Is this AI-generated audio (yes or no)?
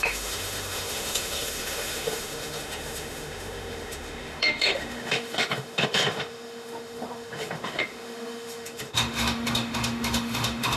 yes